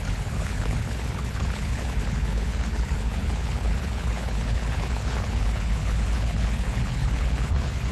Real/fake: fake